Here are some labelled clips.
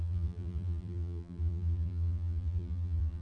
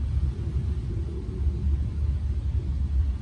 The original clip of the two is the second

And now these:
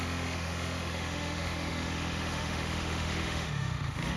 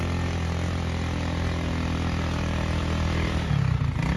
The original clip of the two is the second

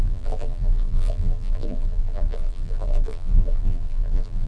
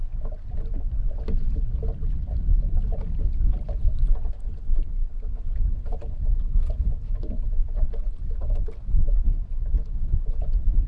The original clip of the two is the second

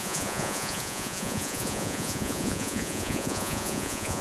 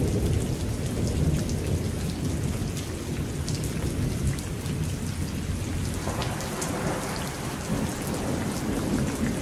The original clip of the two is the second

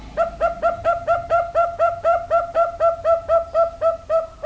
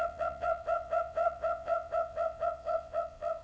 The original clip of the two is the first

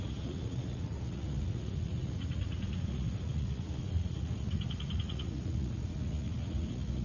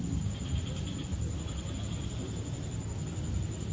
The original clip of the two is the second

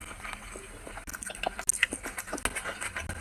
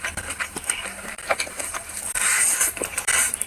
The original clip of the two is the first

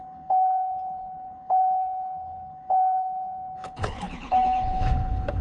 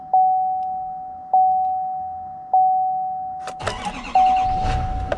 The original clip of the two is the second